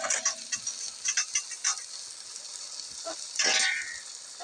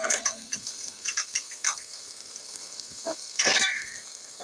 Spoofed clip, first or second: second